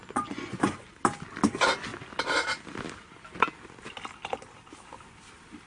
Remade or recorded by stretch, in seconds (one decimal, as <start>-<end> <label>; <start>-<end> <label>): 0.0-0.9 remade; 0.9-5.7 recorded